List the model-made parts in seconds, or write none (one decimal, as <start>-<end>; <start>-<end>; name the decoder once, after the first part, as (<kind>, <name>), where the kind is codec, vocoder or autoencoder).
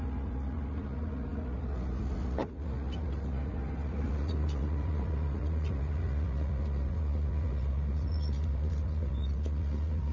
0.0-10.1 (vocoder, Vocos)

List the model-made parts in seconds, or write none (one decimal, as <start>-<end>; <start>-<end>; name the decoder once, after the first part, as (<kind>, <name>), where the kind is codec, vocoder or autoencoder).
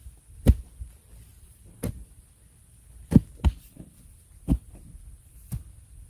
none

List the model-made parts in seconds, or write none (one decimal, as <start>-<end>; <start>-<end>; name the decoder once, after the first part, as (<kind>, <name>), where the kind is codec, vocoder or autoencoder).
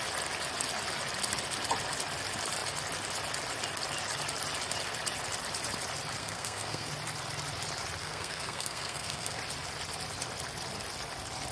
6.2-6.9 (codec, SNAC); 8.0-9.4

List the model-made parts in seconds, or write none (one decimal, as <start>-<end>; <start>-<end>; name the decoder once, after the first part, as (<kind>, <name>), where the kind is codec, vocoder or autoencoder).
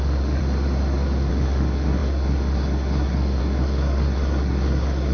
0.0-0.4 (codec, SNAC); 1.3-5.1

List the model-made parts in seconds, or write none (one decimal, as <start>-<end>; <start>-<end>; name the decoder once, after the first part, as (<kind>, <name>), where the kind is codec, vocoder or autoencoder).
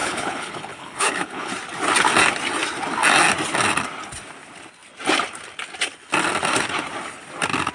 0.0-1.5 (codec, HILCodec)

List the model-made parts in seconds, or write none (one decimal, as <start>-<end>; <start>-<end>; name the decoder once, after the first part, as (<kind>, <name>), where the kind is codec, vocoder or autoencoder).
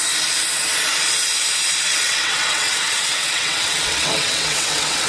1.9-5.1 (vocoder, WaveNeXt)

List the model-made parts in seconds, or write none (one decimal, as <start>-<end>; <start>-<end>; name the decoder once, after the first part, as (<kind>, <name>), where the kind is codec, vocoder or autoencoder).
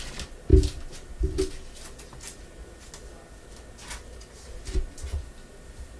none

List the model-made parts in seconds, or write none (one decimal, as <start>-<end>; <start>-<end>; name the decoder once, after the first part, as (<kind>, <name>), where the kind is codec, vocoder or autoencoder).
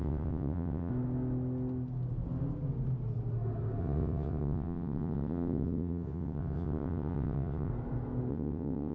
0.0-0.9 (vocoder, WaveNeXt); 3.8-7.7; 8.3-8.9